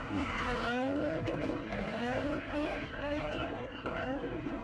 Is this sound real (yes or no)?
no